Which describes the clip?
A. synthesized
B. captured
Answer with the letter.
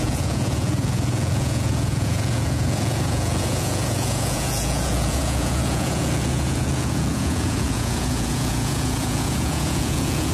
A